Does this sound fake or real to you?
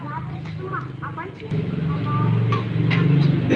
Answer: real